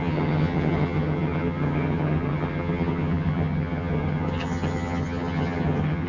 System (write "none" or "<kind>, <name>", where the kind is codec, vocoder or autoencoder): vocoder, HiFi-GAN